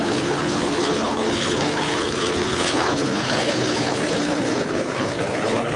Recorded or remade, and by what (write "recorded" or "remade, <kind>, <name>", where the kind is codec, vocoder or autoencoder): remade, codec, HILCodec